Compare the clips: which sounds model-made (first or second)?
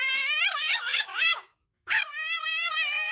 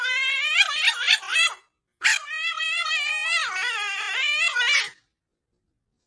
first